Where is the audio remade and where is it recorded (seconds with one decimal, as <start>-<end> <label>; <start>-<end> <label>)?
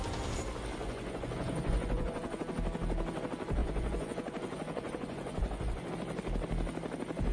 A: 0.0-0.8 recorded; 0.8-2.4 remade; 2.4-3.6 recorded; 3.6-5.9 remade; 5.9-7.3 recorded